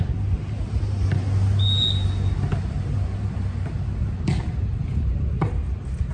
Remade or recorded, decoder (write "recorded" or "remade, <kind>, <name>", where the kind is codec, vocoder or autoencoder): recorded